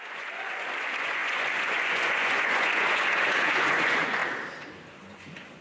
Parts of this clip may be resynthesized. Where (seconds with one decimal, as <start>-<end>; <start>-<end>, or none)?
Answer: 0.0-4.2; 5.1-5.6